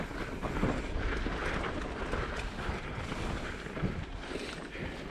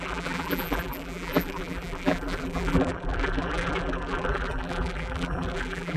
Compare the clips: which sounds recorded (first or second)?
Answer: first